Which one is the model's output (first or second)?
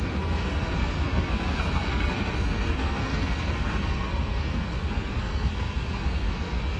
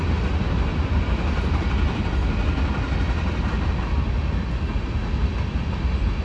first